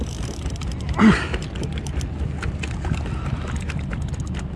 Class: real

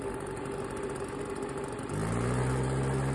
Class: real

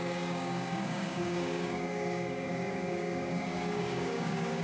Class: fake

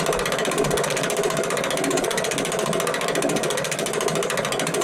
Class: real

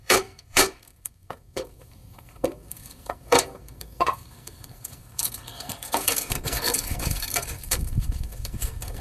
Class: fake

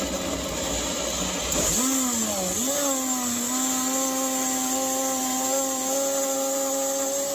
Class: real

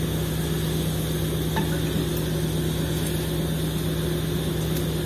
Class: real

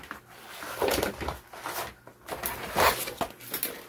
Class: real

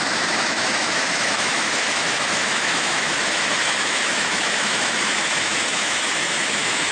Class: fake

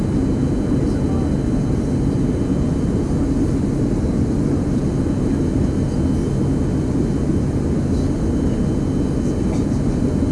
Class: real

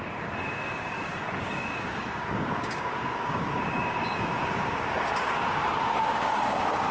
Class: fake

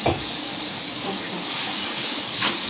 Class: fake